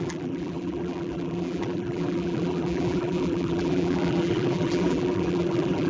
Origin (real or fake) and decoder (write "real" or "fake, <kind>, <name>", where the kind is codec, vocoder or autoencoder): fake, vocoder, BigVGAN v2